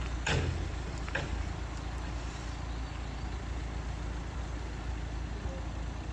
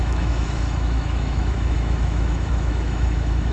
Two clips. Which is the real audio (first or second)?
first